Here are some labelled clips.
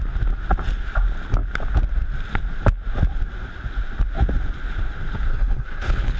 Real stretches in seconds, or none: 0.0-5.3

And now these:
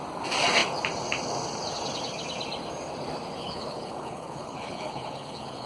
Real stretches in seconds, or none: 0.0-3.4

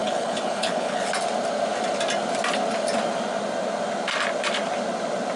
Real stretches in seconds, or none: 1.1-5.4

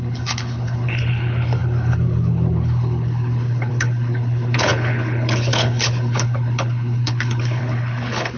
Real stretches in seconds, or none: none

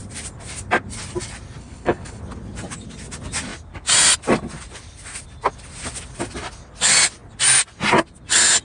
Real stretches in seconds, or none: 0.0-1.6; 2.2-8.6

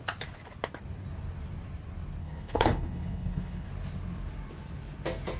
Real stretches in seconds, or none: 0.0-2.2; 3.7-5.4

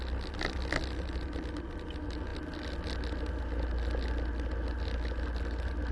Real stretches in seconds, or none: 0.0-5.9